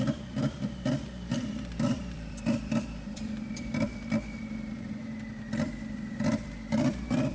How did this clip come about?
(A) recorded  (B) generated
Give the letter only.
B